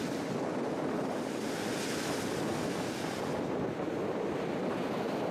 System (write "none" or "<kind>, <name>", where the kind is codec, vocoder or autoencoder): none